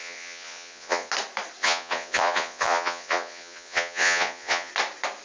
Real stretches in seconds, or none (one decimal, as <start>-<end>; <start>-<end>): 1.1-1.6; 4.7-5.2